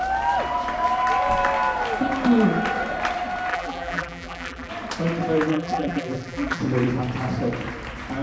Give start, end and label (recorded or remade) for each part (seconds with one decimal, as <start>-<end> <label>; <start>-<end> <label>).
0.0-3.5 recorded; 3.5-4.7 remade; 4.7-5.5 recorded; 5.5-6.6 remade; 6.6-8.2 recorded